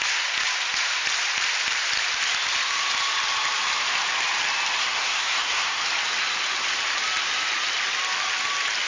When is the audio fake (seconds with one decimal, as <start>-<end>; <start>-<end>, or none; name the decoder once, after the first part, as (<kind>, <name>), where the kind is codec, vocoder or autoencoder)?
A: 4.8-5.8 (codec, SNAC)